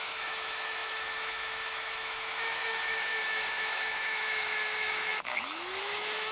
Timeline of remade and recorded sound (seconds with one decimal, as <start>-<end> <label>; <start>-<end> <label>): 0.0-6.3 remade

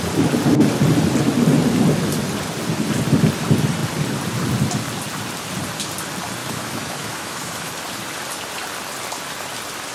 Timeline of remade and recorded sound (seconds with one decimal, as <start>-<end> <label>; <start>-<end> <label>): 0.0-6.4 recorded; 6.4-7.7 remade; 7.7-9.9 recorded

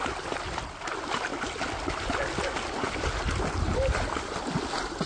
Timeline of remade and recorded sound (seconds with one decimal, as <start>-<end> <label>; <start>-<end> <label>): 0.0-5.1 recorded

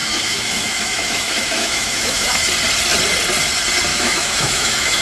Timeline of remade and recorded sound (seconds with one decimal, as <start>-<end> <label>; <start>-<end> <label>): 0.0-2.3 remade; 2.3-3.9 recorded; 3.9-5.0 remade

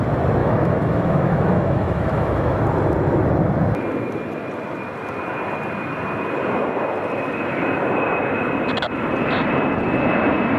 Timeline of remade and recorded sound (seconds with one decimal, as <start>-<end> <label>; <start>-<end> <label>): 0.0-0.4 recorded; 0.4-2.6 remade; 2.6-10.6 recorded

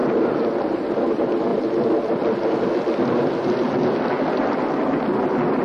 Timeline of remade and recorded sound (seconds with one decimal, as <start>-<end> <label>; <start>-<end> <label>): 0.0-5.6 recorded